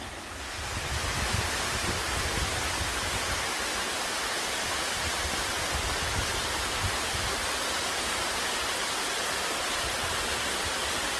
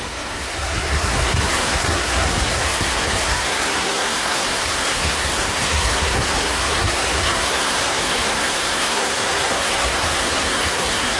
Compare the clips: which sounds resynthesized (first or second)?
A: second